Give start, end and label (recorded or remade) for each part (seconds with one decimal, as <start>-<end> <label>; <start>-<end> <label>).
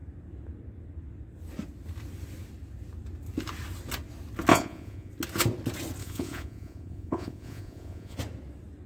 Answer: 0.0-4.5 recorded; 4.5-5.1 remade; 5.1-6.0 recorded; 6.0-8.2 remade; 8.2-8.9 recorded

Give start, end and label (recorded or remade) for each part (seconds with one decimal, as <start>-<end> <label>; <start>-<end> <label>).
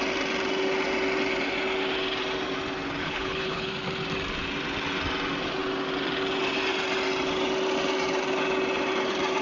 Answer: 0.0-3.0 recorded; 3.0-3.7 remade; 3.7-9.4 recorded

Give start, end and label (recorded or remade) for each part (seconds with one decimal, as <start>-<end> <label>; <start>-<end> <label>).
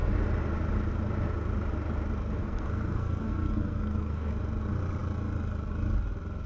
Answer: 0.0-2.4 recorded; 2.4-4.3 remade; 4.3-6.5 recorded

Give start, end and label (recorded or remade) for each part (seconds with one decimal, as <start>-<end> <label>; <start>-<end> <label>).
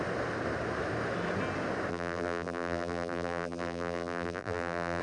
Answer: 0.0-1.9 recorded; 1.9-5.0 remade